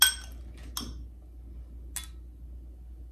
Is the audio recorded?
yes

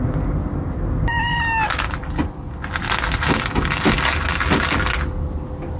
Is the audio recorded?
yes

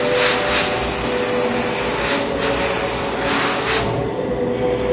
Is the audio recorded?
yes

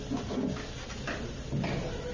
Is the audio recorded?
yes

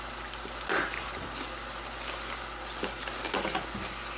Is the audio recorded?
yes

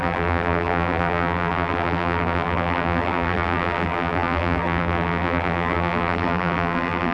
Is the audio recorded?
no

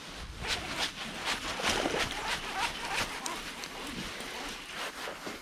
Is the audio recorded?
yes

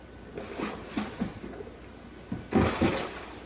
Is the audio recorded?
yes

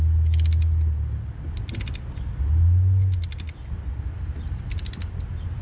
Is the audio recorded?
yes